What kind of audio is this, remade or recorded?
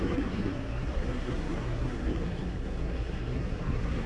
remade